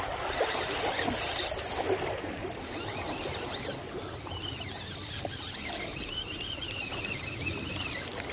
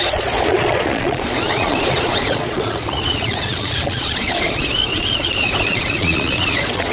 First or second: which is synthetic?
second